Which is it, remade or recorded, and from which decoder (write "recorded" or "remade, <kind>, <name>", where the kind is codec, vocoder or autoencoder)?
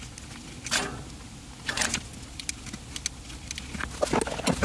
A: recorded